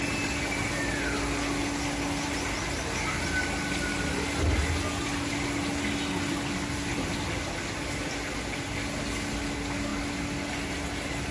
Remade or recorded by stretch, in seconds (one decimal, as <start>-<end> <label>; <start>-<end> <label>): 0.0-11.3 recorded